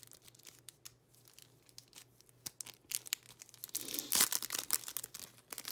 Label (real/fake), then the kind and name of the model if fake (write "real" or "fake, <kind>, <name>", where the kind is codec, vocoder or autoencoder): real